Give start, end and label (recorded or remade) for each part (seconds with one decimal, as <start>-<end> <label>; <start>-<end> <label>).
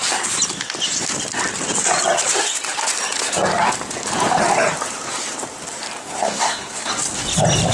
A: 0.0-6.0 recorded; 6.0-6.9 remade; 6.9-7.7 recorded